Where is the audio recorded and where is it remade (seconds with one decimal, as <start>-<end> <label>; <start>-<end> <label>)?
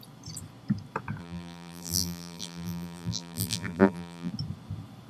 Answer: 0.0-1.2 recorded; 1.2-4.3 remade; 4.3-5.1 recorded